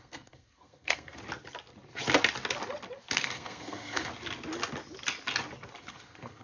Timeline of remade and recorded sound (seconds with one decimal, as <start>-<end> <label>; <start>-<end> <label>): 0.0-1.2 remade; 1.2-3.1 recorded; 3.1-4.1 remade; 4.1-5.8 recorded; 5.8-6.4 remade